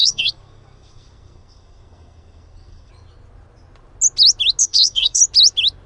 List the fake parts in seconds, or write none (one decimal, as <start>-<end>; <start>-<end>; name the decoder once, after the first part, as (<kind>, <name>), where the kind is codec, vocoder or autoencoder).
0.0-2.9 (codec, SNAC); 4.6-5.2